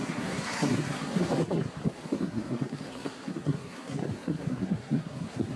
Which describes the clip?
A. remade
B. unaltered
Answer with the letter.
A